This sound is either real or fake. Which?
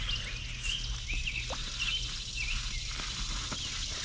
real